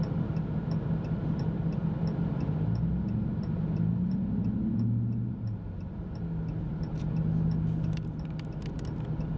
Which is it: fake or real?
real